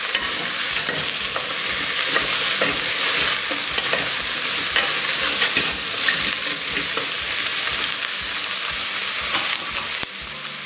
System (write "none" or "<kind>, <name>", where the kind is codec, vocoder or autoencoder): none